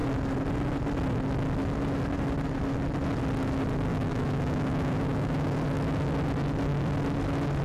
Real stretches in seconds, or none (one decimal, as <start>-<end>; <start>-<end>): 0.0-3.9; 5.6-7.6